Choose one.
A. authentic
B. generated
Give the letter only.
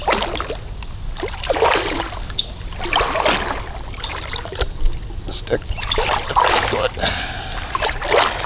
A